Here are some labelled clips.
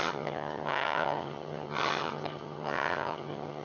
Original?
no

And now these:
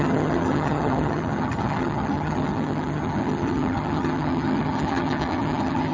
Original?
no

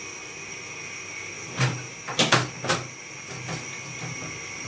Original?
yes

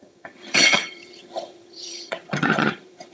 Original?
no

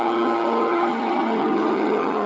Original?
no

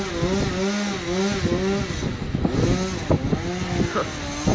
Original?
yes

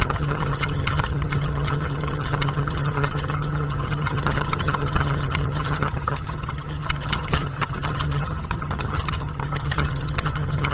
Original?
no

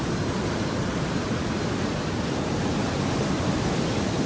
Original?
yes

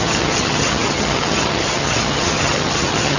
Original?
no